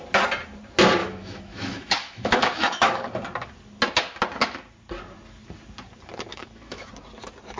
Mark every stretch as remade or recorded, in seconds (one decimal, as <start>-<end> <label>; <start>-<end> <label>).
0.0-1.0 recorded; 1.0-3.0 remade; 3.0-6.3 recorded; 6.3-6.9 remade; 6.9-7.6 recorded